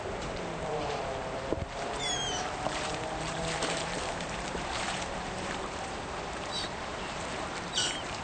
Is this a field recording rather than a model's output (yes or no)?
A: no